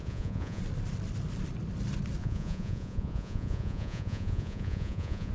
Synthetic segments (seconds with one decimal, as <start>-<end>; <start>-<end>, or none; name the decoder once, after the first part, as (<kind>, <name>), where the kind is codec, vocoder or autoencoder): 0.0-0.6 (vocoder, Vocos); 2.2-5.3